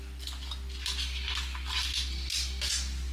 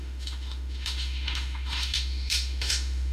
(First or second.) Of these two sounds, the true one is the first